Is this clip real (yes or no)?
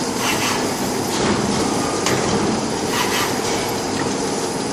yes